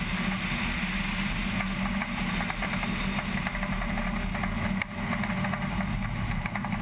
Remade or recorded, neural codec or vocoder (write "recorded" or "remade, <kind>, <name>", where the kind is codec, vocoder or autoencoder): recorded